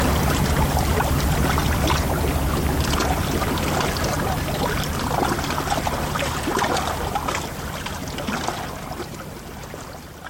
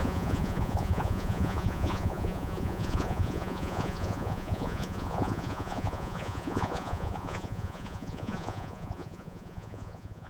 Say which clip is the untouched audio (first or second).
first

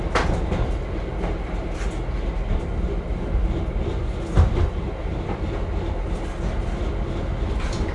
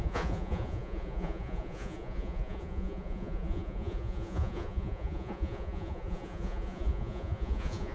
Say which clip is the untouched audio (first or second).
first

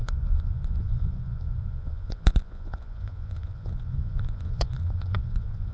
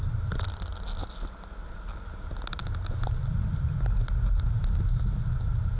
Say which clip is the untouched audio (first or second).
second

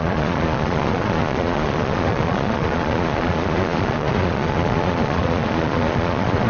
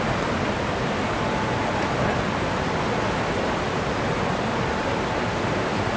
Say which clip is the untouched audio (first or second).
second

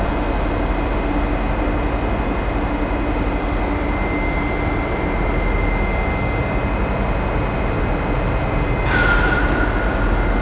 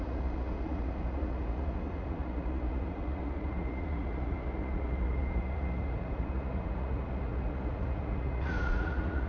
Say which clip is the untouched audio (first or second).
first